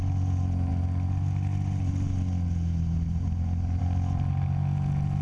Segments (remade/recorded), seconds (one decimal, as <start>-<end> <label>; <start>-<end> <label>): 0.0-5.2 recorded